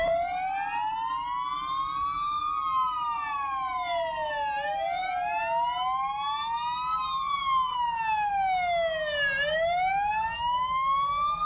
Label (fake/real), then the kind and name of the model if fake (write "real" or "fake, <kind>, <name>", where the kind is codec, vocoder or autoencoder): real